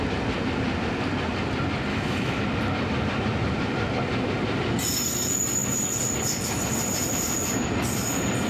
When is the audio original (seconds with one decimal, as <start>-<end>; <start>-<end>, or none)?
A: 0.0-1.9; 2.4-8.5